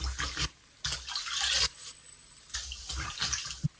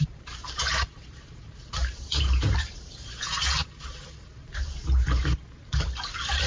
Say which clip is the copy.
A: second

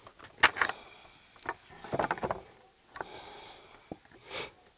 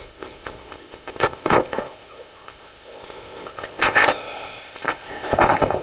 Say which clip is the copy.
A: second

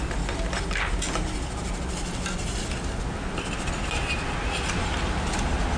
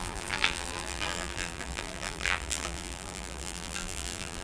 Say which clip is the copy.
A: second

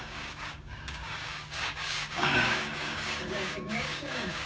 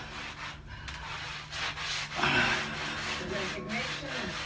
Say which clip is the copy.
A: first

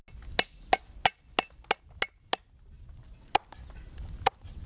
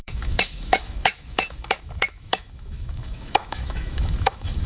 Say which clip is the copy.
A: second